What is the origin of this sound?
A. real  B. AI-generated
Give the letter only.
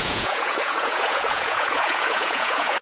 B